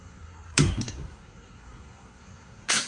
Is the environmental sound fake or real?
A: fake